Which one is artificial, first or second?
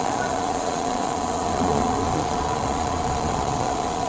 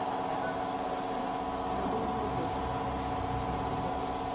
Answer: first